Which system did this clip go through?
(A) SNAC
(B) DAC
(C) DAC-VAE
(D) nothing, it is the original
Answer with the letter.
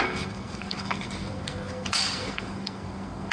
A